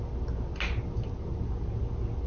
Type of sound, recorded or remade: recorded